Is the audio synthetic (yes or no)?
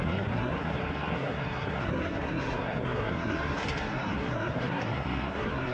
yes